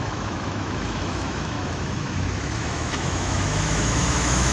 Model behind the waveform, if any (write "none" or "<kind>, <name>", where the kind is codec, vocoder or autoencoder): autoencoder, DAC-VAE